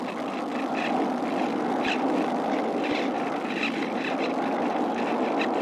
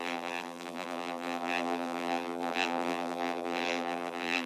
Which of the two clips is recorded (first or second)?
first